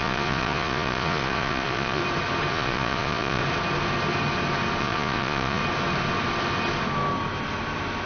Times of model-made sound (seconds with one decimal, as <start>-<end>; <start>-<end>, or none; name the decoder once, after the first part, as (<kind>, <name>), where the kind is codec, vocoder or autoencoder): 0.0-2.0 (vocoder, Vocos); 2.5-3.4; 4.8-5.6